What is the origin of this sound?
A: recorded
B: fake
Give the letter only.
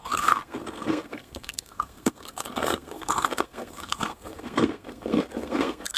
B